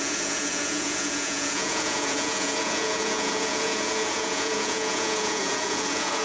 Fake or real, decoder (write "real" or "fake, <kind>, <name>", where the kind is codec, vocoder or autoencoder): fake, vocoder, Vocos